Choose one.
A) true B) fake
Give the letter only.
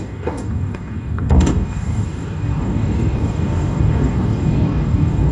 B